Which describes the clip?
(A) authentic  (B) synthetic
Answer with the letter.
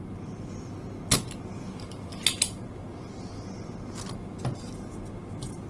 A